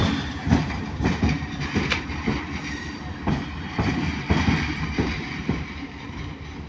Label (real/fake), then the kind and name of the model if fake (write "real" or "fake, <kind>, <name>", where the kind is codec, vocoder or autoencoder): fake, vocoder, BigVGAN v2